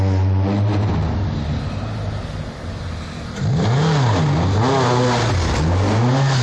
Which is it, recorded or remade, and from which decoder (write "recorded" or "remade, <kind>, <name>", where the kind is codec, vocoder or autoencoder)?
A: recorded